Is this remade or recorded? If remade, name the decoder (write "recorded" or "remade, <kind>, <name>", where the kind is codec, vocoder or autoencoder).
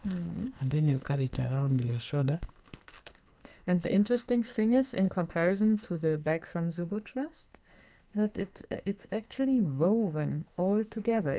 remade, codec, SNAC